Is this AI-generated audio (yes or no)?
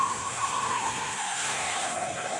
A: yes